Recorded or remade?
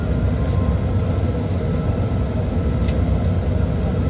recorded